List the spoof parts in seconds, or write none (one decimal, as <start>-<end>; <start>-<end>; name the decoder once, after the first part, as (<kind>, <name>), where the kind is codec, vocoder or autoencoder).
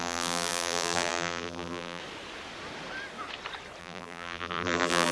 0.0-2.0 (vocoder, BigVGAN v2); 3.8-5.1